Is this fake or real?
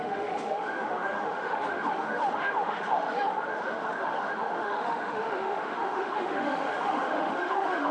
fake